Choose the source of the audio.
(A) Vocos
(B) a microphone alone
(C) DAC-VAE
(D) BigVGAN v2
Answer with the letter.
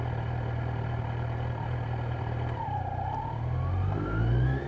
B